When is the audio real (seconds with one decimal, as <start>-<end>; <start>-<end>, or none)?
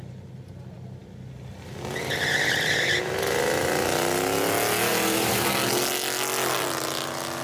0.0-4.9; 5.5-7.4